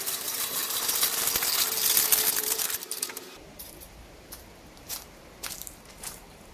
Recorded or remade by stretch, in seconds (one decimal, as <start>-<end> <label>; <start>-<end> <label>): 0.0-0.6 remade; 0.6-2.3 recorded; 2.3-6.5 remade